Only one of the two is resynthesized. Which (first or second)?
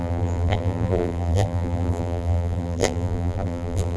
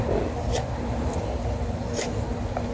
first